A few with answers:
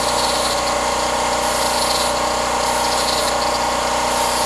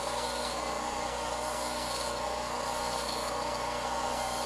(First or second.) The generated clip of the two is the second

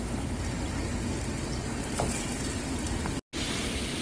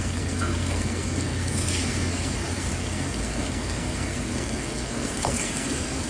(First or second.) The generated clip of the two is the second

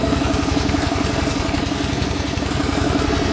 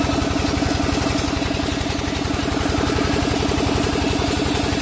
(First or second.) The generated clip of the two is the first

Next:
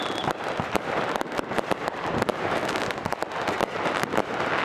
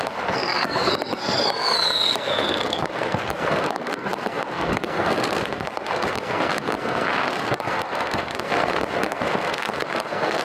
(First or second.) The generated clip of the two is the second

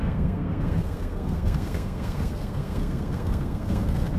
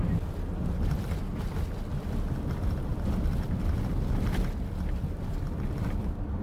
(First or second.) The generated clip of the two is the first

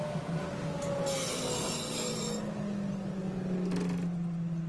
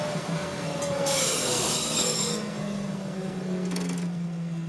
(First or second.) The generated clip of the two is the second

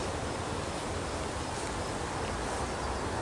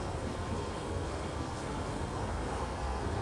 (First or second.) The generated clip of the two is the second